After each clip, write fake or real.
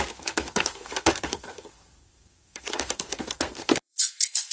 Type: fake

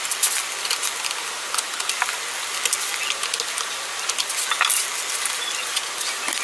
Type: real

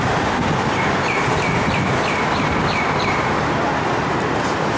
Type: real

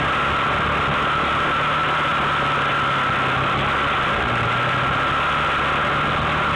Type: real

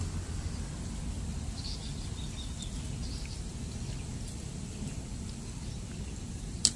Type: real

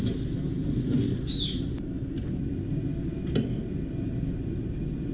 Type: real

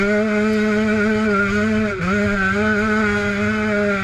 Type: real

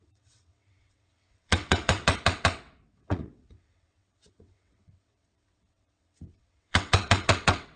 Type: fake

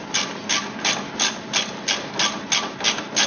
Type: real